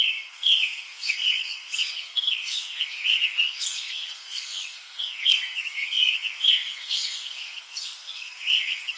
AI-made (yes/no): yes